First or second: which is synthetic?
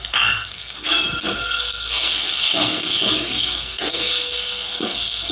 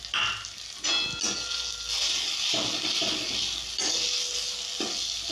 first